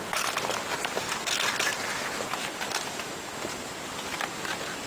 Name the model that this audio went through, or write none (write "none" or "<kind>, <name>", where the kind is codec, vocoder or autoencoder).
none